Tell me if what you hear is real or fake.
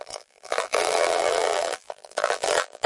fake